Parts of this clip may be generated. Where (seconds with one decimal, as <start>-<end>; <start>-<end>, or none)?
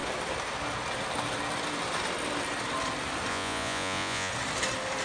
3.3-4.3